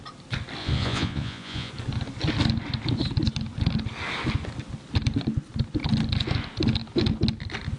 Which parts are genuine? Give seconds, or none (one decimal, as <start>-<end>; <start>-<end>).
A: 0.0-0.6; 1.7-7.8